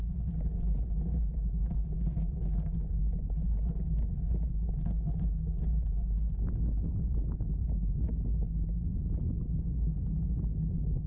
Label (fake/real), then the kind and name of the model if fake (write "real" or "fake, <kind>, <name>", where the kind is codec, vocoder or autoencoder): real